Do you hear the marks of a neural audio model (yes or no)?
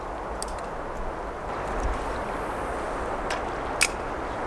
no